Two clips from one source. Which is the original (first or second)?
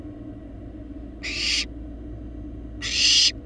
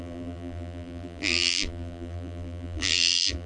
first